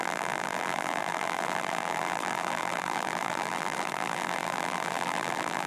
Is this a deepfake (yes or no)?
yes